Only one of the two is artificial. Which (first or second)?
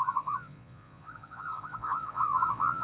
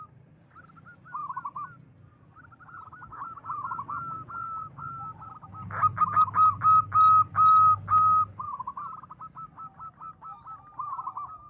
first